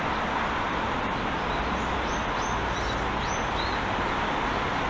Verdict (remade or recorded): recorded